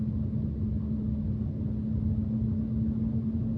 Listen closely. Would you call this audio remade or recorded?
recorded